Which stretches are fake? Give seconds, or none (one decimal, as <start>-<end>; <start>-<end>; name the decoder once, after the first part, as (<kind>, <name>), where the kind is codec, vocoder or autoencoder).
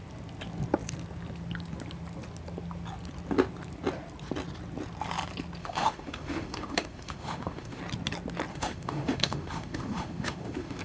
5.6-7.8 (autoencoder, DAC-VAE); 8.5-10.8